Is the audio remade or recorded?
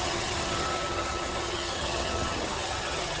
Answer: remade